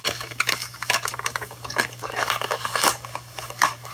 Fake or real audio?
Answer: fake